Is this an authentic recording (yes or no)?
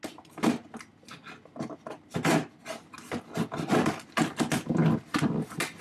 yes